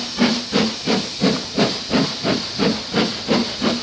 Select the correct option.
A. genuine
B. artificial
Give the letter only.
A